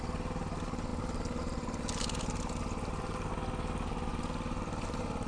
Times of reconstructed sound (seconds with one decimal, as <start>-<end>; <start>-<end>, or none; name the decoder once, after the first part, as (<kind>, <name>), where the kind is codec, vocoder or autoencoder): none